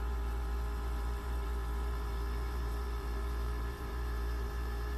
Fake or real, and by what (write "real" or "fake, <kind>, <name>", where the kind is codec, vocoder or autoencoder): fake, vocoder, BigVGAN v2